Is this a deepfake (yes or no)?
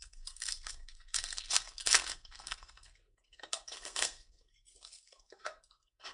yes